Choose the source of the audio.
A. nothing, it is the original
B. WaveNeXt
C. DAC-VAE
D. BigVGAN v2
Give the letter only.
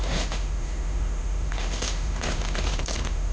C